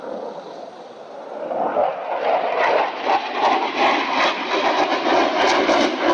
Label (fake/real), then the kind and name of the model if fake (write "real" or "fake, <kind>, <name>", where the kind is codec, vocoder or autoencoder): real